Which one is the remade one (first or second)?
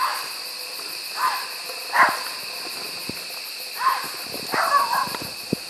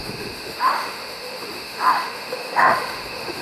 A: second